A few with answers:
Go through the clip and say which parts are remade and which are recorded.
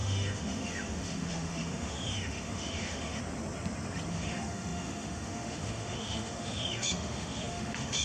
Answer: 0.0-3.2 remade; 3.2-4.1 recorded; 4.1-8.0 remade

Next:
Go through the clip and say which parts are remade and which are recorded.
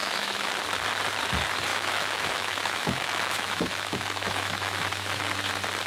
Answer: 0.0-0.5 remade; 0.5-1.7 recorded; 1.7-5.2 remade; 5.2-5.9 recorded